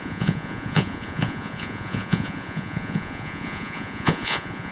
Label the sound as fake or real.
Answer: fake